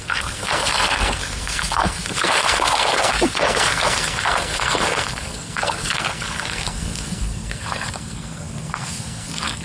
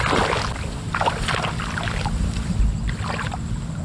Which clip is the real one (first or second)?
second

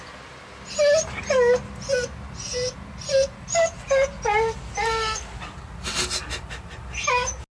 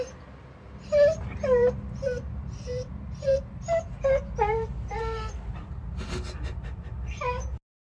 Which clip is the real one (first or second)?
first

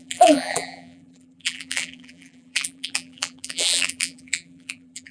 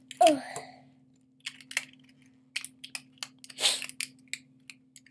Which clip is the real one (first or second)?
second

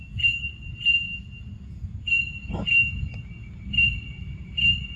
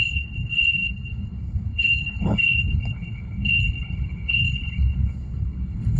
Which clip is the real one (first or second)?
first